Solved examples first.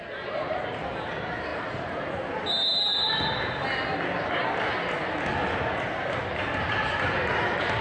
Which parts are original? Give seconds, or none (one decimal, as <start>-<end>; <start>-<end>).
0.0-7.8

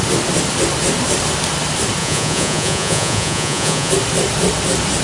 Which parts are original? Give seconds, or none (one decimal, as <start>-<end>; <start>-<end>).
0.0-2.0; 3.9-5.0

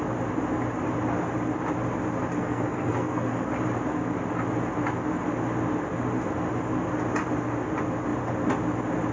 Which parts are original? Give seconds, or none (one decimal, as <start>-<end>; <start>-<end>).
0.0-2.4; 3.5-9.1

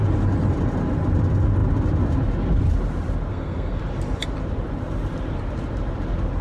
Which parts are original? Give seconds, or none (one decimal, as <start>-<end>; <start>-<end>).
0.0-3.3; 3.8-6.4

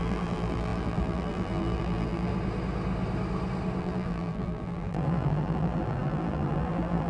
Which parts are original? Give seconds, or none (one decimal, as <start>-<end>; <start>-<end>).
2.3-3.8

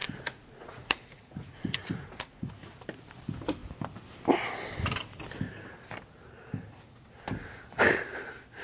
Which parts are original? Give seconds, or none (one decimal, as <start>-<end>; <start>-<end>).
2.5-8.6

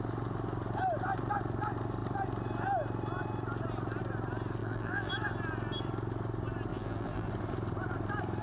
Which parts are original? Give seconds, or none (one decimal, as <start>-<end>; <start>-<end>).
0.0-4.6; 5.1-6.7; 7.3-8.4